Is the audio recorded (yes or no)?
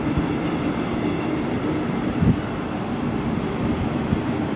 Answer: yes